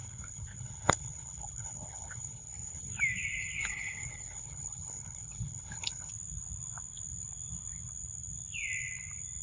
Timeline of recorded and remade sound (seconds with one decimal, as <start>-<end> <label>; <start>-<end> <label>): 0.0-2.9 remade; 2.9-3.6 recorded; 3.6-6.1 remade; 6.1-9.4 recorded